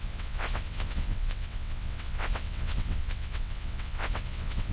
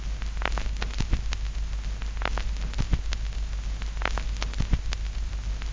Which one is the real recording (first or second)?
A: second